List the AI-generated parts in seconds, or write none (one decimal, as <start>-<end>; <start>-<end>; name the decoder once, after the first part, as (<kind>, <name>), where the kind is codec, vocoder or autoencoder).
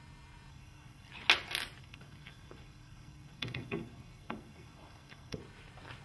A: 0.5-1.1 (codec, SNAC); 1.8-5.4